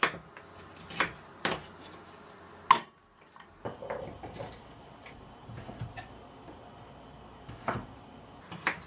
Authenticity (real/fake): real